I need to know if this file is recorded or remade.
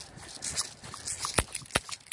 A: recorded